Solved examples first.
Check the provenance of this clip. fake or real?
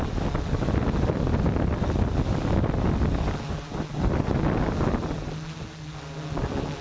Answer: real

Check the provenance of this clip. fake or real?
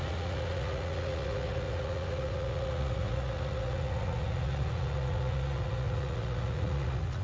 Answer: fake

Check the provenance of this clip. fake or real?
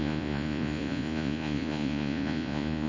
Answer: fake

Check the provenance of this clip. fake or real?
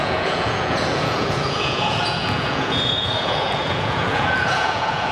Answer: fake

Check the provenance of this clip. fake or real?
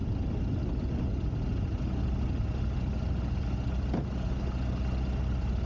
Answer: real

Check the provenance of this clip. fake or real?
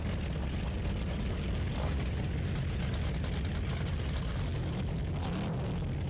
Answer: real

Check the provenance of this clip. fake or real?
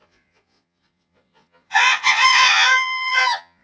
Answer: fake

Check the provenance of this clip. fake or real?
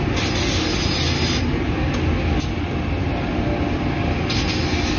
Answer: real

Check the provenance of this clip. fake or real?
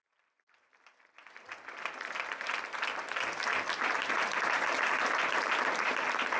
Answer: real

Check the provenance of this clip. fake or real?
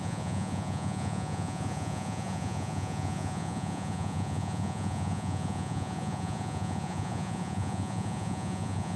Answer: fake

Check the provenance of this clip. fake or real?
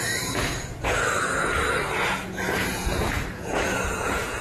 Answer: fake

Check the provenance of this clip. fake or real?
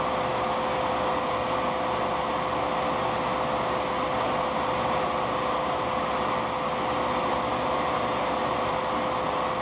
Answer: real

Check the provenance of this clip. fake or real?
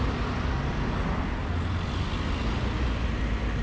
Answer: real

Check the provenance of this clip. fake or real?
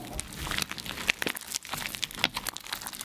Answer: real